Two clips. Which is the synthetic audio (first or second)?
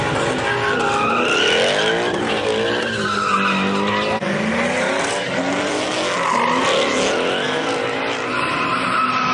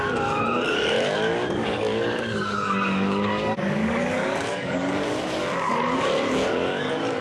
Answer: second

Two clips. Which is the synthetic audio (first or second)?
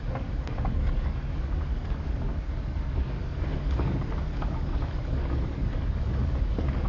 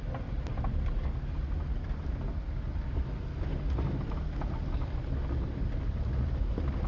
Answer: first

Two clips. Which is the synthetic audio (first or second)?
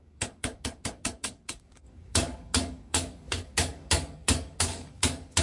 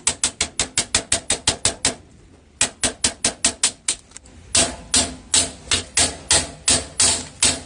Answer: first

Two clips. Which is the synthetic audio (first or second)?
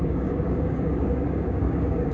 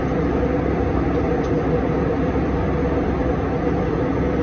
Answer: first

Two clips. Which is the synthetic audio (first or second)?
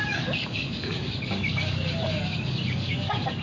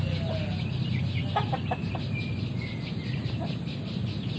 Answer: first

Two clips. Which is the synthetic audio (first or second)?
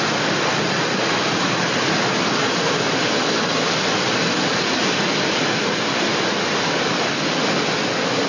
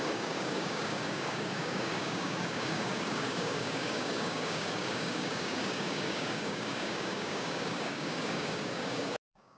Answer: second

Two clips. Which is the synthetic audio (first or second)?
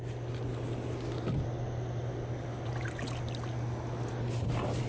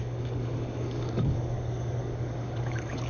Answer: second